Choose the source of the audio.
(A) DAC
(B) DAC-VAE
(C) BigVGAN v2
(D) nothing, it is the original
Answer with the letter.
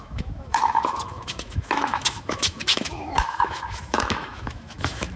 B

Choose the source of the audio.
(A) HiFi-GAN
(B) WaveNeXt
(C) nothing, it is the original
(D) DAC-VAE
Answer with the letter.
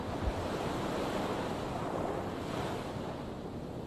C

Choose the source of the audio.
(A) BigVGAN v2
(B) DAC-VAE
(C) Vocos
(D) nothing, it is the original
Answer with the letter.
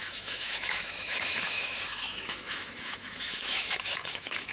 B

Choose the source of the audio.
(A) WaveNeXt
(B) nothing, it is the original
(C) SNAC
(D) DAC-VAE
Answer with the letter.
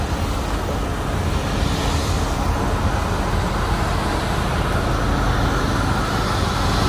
B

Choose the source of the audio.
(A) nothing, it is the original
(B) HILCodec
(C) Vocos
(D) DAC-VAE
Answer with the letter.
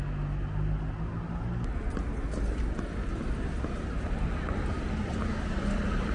A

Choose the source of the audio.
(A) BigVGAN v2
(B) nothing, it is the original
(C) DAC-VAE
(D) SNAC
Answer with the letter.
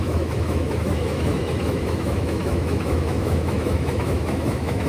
C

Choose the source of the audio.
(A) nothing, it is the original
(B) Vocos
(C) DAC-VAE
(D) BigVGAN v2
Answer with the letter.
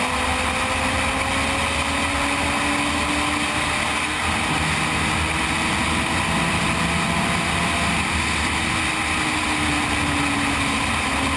A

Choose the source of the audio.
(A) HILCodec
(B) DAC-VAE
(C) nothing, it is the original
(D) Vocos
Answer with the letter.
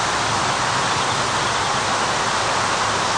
C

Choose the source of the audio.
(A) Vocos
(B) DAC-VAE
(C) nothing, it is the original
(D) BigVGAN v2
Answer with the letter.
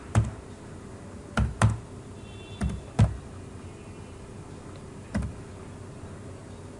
C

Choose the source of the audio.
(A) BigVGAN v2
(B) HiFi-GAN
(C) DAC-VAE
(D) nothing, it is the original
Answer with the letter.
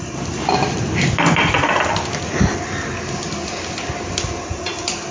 D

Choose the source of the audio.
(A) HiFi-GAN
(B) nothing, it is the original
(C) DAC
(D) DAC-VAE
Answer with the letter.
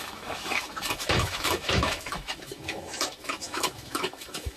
D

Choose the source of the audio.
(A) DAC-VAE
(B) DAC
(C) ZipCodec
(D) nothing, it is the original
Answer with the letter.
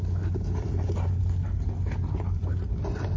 D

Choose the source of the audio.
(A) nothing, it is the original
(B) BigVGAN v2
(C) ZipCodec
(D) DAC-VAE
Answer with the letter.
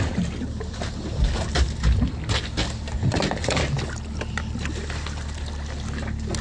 A